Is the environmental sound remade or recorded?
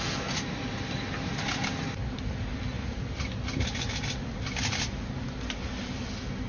recorded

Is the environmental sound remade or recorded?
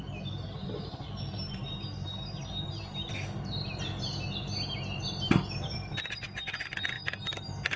recorded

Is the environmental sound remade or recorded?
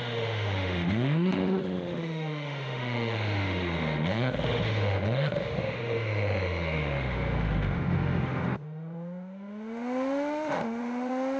remade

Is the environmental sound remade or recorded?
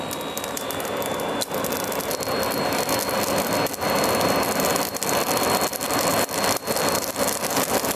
recorded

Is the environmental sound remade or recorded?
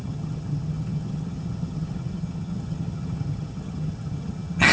remade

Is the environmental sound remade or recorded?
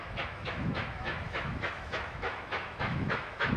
remade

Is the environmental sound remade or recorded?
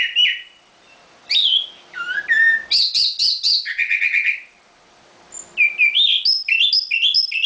recorded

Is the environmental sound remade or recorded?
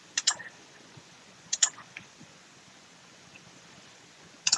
remade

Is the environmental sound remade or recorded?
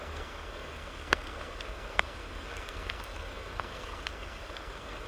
remade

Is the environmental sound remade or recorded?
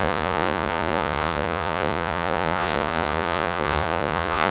remade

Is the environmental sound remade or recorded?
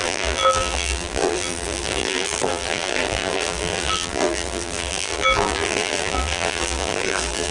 remade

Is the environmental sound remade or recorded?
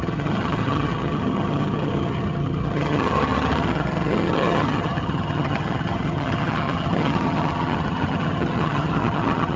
remade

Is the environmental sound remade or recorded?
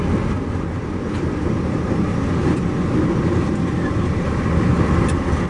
recorded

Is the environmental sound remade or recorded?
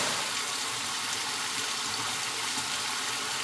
recorded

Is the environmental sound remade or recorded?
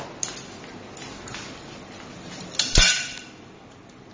recorded